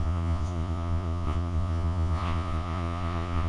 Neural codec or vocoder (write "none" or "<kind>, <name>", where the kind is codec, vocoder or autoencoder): vocoder, Vocos